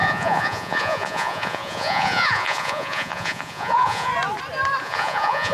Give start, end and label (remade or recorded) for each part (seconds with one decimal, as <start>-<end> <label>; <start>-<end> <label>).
0.0-4.1 remade; 4.1-4.8 recorded; 4.8-5.5 remade

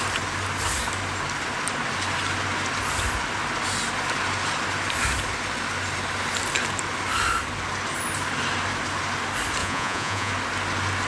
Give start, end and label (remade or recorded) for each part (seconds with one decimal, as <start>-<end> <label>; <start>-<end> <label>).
0.0-9.6 recorded; 9.6-10.3 remade; 10.3-11.1 recorded

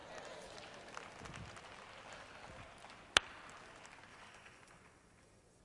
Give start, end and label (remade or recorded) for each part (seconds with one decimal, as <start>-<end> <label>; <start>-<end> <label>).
0.0-4.1 recorded; 4.1-5.6 remade

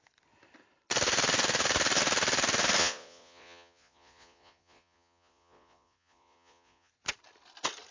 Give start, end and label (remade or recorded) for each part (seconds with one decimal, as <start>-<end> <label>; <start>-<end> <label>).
0.0-2.8 recorded; 2.8-6.9 remade; 6.9-7.9 recorded

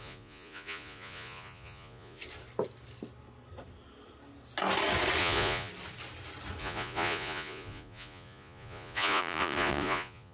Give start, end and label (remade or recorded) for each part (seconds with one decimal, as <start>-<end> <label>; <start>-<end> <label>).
0.0-2.2 remade; 2.2-5.2 recorded; 5.2-5.7 remade; 5.7-6.6 recorded; 6.6-10.3 remade

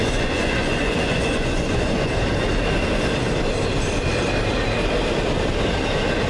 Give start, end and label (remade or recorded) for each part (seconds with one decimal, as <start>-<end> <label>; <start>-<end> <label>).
0.0-2.1 remade; 2.1-6.3 recorded

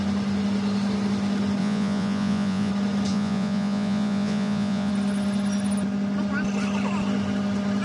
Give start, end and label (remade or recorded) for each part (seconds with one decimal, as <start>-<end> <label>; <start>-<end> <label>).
0.0-1.6 recorded; 1.6-2.7 remade; 2.7-3.1 recorded; 3.1-4.9 remade; 4.9-7.8 recorded

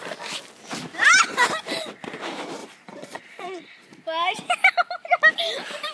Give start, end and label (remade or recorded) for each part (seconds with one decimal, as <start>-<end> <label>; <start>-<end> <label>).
0.0-2.6 recorded; 2.6-4.0 remade; 4.0-5.9 recorded